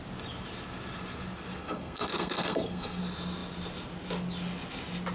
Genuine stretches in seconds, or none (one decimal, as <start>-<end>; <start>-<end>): 0.0-1.6; 3.0-5.1